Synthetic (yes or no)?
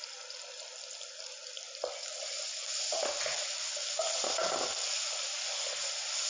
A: no